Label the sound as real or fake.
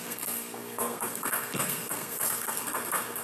fake